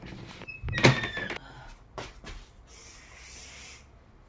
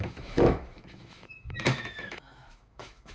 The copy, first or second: second